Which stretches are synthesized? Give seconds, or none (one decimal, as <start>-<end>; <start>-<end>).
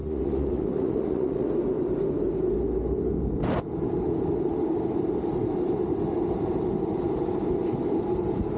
0.0-1.5